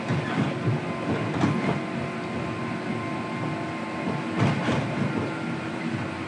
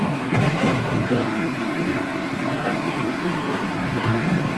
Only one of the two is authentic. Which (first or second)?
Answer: first